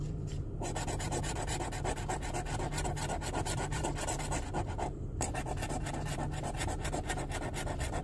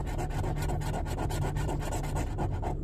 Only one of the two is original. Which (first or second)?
second